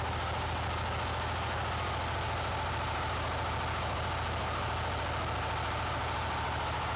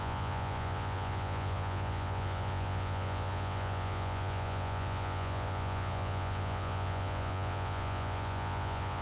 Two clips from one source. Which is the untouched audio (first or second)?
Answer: first